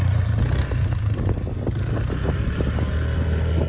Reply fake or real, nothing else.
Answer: real